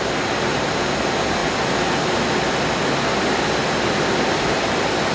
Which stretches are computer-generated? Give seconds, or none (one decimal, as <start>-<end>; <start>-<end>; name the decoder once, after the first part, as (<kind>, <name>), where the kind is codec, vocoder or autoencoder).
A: none